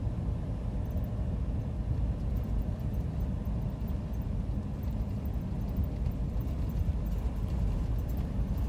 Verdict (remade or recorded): recorded